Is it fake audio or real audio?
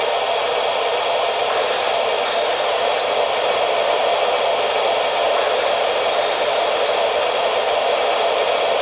fake